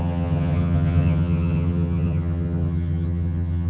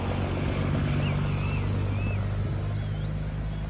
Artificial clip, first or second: first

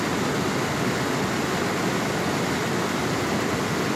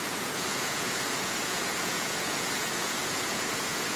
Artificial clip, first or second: second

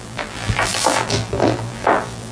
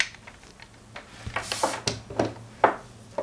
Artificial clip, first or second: first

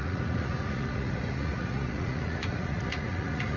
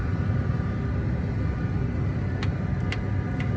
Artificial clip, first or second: first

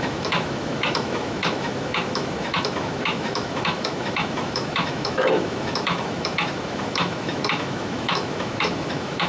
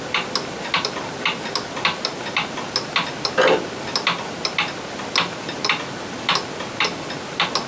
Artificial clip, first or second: first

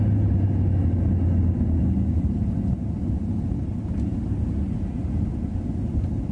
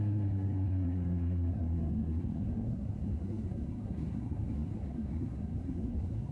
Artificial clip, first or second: second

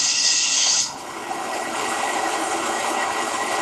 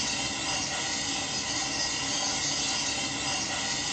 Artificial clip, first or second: first